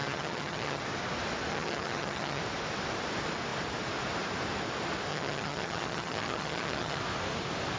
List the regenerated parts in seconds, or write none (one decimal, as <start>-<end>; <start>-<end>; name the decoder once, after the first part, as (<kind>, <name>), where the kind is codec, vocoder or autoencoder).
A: 0.0-0.8 (vocoder, HiFi-GAN); 1.5-2.4; 5.1-7.0